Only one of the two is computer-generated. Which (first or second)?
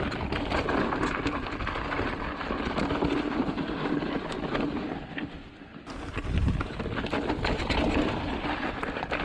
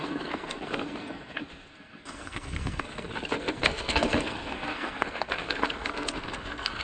second